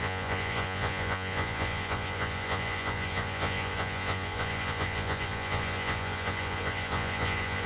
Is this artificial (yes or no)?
yes